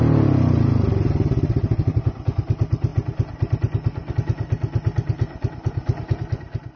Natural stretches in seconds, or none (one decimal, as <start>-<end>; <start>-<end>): 0.0-6.8